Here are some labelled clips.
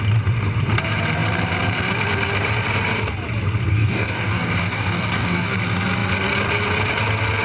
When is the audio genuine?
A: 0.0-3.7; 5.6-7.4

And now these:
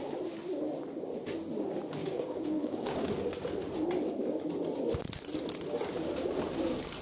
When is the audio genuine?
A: 0.0-2.0; 3.1-7.0

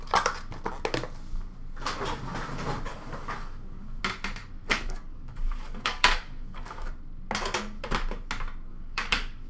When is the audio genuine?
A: 0.0-2.9; 4.0-4.7; 6.9-8.7

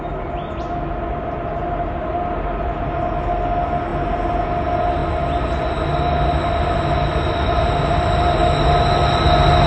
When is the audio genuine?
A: 0.0-9.7

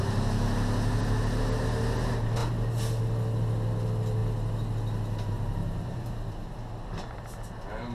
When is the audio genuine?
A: 0.0-7.9

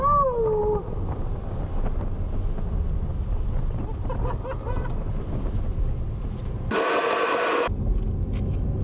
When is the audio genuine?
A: 0.0-8.8

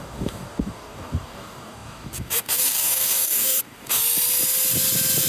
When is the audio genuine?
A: 4.0-5.3

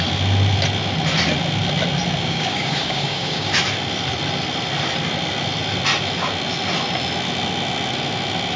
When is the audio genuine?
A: 0.0-2.2; 3.5-8.6